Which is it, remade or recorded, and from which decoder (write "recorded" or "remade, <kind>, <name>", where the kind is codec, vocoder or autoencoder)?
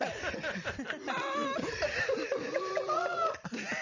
remade, vocoder, BigVGAN v2